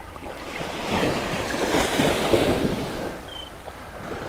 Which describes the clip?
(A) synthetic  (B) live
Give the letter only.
A